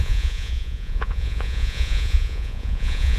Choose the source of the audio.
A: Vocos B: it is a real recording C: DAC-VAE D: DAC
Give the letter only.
A